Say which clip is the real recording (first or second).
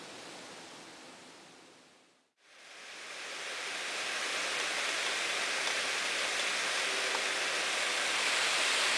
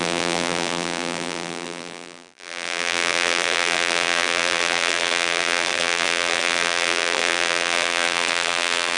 first